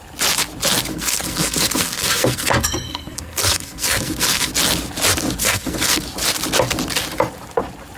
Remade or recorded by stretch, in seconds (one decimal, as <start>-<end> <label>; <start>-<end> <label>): 0.0-0.9 recorded; 0.9-4.5 remade; 4.5-5.4 recorded; 5.4-6.0 remade; 6.0-8.0 recorded